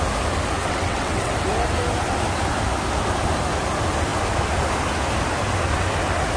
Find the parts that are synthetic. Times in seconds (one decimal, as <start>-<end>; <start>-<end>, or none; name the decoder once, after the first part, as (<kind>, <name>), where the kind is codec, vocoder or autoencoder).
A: 0.6-1.3 (vocoder, WaveNeXt)